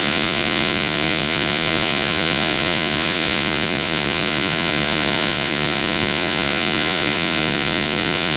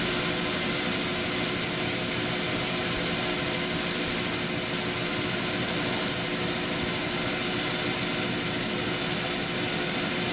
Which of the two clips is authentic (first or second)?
second